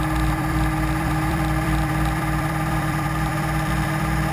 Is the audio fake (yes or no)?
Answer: yes